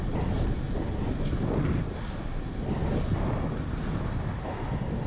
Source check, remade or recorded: recorded